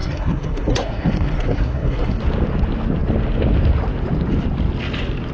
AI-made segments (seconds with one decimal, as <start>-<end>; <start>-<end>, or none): 0.0-2.2